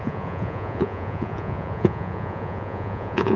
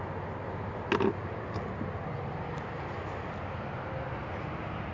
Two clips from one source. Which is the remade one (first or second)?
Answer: first